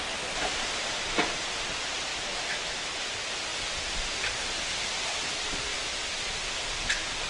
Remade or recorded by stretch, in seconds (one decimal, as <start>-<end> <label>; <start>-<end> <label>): 0.0-2.1 recorded; 2.1-2.9 remade; 2.9-7.3 recorded